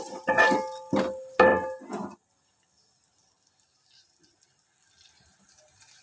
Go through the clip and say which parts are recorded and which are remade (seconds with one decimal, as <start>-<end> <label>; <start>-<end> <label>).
0.0-6.0 recorded